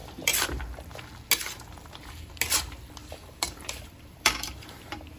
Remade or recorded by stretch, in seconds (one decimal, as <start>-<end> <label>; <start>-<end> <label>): 0.0-0.9 remade; 0.9-3.0 recorded; 3.0-5.2 remade